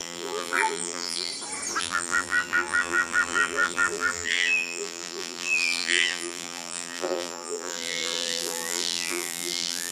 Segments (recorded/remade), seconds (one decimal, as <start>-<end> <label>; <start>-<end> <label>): 0.0-1.3 remade; 1.3-1.8 recorded; 1.8-9.9 remade